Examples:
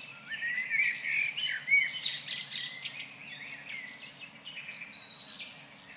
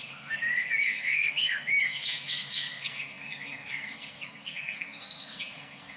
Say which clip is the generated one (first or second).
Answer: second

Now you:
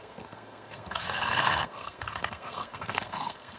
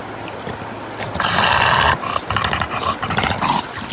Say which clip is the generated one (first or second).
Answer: first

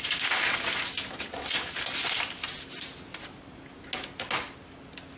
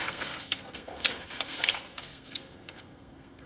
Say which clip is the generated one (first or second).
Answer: second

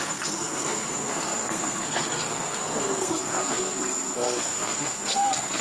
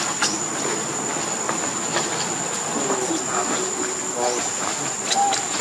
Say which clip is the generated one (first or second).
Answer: first